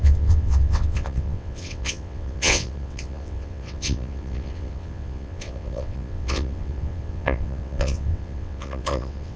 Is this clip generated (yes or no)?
yes